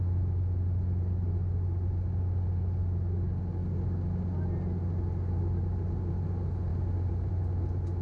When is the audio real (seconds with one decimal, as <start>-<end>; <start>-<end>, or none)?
0.0-8.0